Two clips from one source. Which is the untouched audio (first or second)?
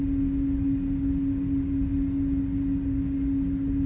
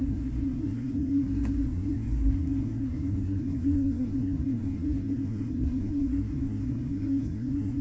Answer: first